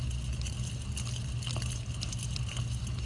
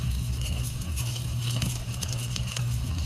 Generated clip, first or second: second